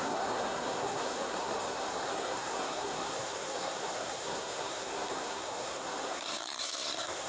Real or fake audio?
fake